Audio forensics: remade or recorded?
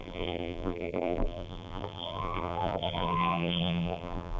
remade